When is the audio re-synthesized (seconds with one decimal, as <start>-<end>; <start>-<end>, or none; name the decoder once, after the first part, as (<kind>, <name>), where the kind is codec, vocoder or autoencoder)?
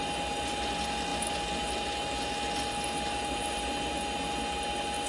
none